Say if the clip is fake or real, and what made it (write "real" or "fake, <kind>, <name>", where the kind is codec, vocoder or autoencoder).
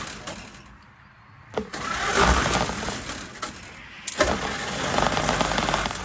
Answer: real